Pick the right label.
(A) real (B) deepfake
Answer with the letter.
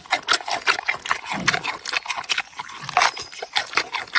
A